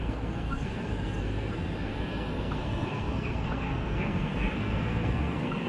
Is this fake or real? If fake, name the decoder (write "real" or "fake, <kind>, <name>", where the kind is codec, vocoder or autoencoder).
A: fake, codec, SNAC